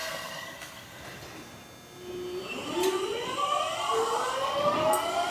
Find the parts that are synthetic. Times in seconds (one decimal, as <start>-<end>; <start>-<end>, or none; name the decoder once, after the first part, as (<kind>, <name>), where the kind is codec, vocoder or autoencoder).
0.0-1.0 (codec, SNAC)